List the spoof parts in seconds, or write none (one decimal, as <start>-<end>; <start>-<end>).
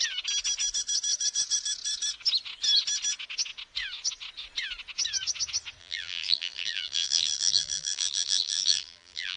5.8-9.4